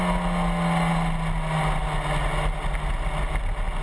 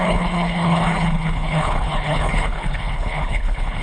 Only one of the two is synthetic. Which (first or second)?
second